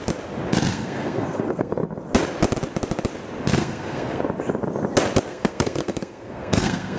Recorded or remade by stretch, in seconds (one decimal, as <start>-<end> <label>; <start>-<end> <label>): 0.0-0.7 recorded; 0.7-1.7 remade; 1.7-3.5 recorded; 3.5-4.2 remade; 4.2-5.3 recorded; 5.3-7.0 remade